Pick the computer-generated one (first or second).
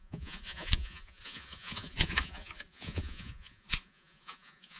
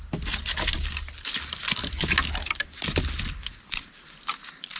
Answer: first